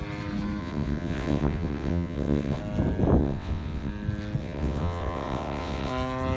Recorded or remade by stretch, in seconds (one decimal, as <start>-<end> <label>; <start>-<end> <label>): 0.0-0.6 recorded; 0.6-2.6 remade; 2.6-3.2 recorded; 3.2-3.9 remade; 3.9-4.4 recorded; 4.4-5.9 remade; 5.9-6.4 recorded